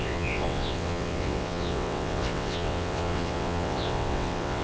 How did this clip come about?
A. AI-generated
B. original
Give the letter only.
A